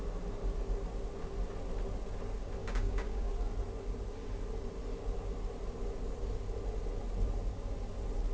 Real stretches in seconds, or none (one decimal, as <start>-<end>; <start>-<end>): 0.0-2.6; 3.3-8.3